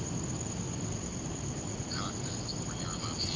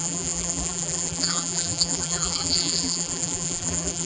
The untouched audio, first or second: first